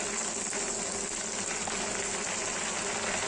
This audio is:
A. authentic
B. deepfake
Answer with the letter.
A